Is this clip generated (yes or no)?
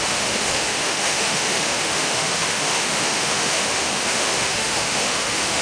yes